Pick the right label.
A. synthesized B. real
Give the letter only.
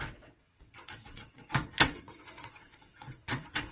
A